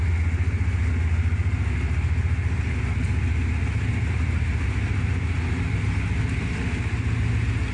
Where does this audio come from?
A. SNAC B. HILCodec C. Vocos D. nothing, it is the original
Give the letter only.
D